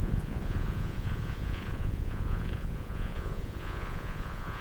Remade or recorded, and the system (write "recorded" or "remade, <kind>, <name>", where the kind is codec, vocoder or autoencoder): remade, vocoder, Vocos